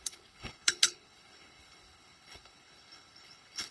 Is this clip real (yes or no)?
no